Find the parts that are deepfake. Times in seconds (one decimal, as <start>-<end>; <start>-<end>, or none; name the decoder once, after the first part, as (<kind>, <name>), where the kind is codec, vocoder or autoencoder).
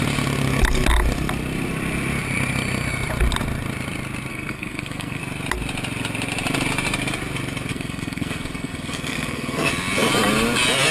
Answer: 4.3-5.2 (codec, SNAC); 7.7-9.7